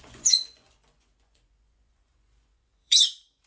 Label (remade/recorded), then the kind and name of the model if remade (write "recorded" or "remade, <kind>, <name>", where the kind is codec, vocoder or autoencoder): remade, vocoder, Vocos